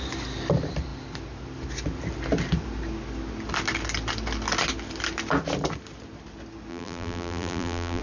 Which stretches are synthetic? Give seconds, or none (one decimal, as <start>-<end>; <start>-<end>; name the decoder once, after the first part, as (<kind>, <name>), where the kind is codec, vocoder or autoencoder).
6.7-8.0 (vocoder, BigVGAN v2)